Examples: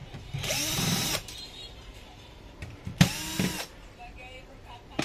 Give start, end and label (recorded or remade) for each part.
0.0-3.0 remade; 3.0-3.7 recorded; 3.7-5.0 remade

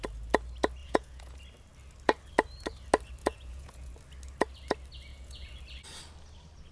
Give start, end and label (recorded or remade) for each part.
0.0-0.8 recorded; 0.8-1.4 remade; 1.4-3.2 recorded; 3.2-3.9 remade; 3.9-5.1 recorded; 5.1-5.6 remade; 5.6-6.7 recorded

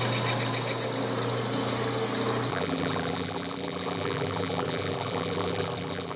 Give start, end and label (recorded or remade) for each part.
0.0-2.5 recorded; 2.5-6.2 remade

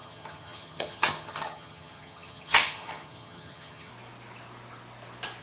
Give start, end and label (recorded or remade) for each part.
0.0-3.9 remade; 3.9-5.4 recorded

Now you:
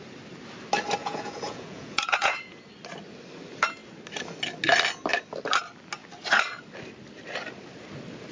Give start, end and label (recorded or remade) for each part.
0.0-1.0 recorded; 1.0-2.6 remade; 2.6-8.3 recorded